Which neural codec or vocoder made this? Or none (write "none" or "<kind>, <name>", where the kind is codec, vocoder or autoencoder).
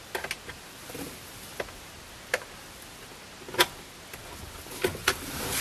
none